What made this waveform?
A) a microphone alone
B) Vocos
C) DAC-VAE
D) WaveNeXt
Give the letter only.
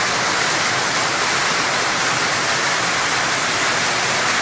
A